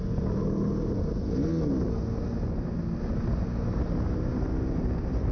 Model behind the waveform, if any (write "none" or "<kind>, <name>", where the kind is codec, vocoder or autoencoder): none